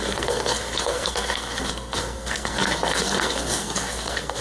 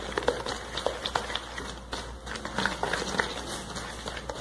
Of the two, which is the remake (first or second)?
first